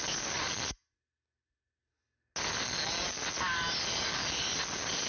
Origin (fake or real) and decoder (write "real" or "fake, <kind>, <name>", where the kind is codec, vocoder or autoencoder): real